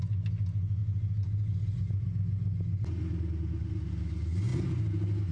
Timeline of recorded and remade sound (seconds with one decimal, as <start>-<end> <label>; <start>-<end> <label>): 0.0-5.3 recorded